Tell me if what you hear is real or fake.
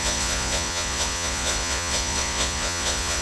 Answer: fake